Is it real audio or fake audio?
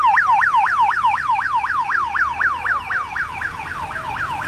real